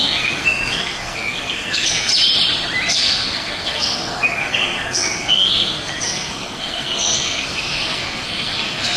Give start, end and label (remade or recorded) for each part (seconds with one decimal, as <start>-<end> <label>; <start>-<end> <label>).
0.0-2.1 remade; 2.1-2.9 recorded; 2.9-9.0 remade